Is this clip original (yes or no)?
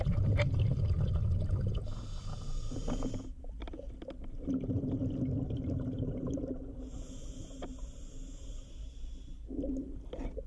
yes